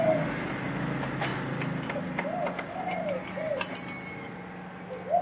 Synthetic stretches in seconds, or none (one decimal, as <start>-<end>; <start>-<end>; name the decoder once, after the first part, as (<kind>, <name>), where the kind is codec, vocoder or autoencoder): none

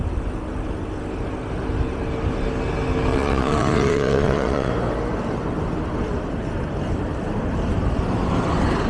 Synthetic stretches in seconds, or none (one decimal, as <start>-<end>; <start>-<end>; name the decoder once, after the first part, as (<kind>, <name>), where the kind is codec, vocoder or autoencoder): 3.1-4.7 (vocoder, Vocos)

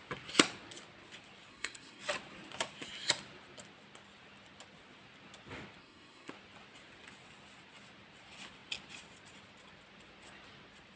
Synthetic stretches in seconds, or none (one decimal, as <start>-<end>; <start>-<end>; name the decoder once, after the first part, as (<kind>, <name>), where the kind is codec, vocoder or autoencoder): 1.5-2.0 (codec, SNAC); 5.8-6.3

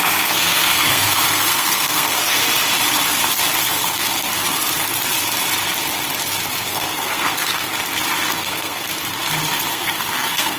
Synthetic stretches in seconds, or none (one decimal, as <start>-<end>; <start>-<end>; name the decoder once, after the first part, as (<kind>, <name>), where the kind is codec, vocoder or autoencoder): 0.0-2.4 (codec, SNAC); 3.7-4.3; 6.7-7.7; 8.3-8.9; 9.7-10.6

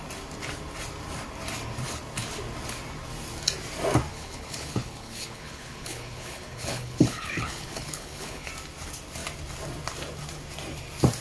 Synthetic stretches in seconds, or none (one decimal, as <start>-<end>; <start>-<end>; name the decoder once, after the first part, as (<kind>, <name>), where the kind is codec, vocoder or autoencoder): 4.1-8.5 (codec, HILCodec)